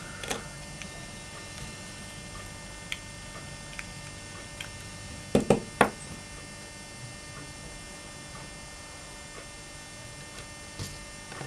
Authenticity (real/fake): real